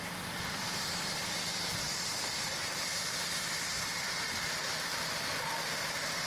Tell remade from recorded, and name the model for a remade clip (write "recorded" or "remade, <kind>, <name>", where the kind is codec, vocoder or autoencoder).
remade, vocoder, BigVGAN v2